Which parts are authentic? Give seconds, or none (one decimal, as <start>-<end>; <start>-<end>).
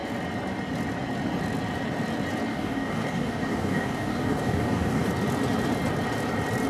0.0-2.5; 5.1-6.7